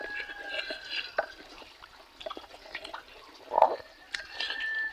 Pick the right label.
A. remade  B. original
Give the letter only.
B